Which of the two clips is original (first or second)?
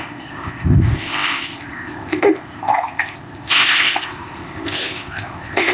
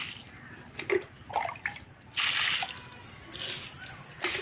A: second